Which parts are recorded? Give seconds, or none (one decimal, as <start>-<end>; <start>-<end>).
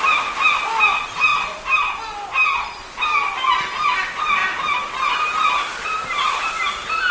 0.0-4.4; 6.5-7.1